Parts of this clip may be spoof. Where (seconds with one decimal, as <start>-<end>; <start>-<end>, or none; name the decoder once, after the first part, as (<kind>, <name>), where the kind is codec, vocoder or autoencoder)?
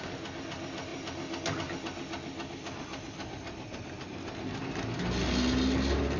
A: none